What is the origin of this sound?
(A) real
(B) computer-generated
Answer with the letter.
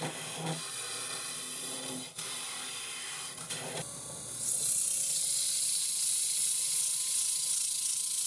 A